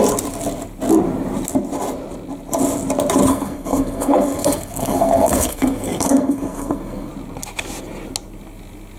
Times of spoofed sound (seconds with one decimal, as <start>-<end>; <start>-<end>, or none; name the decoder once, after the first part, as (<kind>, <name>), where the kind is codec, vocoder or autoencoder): 3.3-7.1 (codec, SNAC)